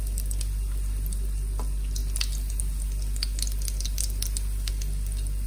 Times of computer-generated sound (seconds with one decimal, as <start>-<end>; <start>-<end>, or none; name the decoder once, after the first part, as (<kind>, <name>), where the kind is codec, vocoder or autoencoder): none